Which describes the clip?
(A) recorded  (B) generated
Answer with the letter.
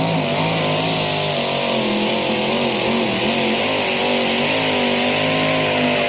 A